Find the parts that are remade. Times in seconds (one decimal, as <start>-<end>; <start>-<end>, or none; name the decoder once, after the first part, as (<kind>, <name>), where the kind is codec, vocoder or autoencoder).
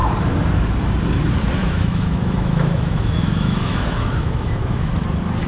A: 1.6-4.9 (autoencoder, DAC-VAE)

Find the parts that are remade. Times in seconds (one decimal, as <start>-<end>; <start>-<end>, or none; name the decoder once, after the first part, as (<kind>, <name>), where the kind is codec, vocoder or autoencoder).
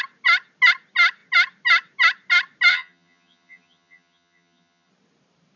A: 2.7-4.9 (vocoder, HiFi-GAN)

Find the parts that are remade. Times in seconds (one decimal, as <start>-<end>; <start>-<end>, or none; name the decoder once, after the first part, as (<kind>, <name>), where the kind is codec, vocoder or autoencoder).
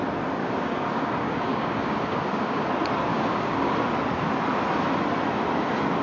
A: 0.4-2.7 (codec, DAC); 3.1-3.7